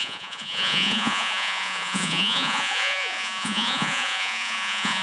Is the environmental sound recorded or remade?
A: remade